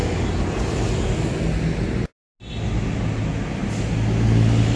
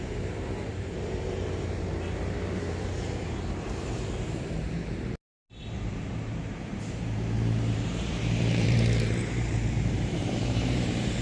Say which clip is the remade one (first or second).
second